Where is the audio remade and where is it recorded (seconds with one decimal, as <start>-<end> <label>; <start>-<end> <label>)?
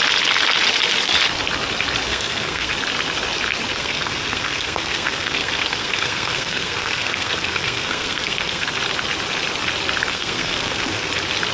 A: 0.0-2.1 recorded; 2.1-2.7 remade; 2.7-3.7 recorded; 3.7-8.7 remade; 8.7-10.1 recorded; 10.1-11.1 remade; 11.1-11.5 recorded